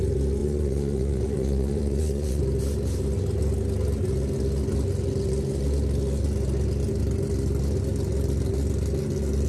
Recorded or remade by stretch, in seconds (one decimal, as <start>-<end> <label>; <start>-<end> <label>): 0.0-0.4 recorded; 0.4-2.4 remade; 2.4-9.5 recorded